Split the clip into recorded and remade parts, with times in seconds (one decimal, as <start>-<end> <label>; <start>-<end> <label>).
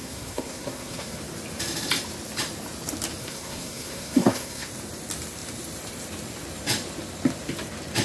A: 0.0-1.2 remade; 1.2-3.2 recorded; 3.2-4.7 remade; 4.7-8.0 recorded